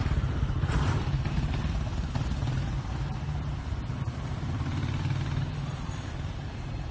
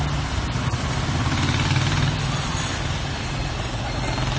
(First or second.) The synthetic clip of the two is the first